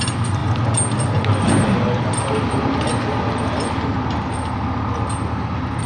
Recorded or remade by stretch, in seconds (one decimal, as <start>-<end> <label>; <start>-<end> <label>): 0.0-5.9 recorded